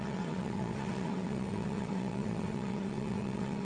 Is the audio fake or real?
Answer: fake